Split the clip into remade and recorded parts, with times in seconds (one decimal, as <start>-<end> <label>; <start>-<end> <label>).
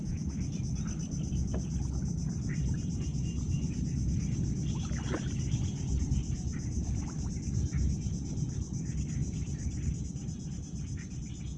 0.0-9.2 recorded; 9.2-10.0 remade; 10.0-11.6 recorded